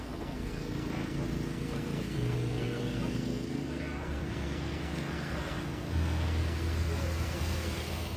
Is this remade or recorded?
remade